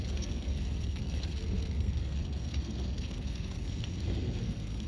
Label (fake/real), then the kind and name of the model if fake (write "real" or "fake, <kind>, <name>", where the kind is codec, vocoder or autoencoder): fake, codec, SNAC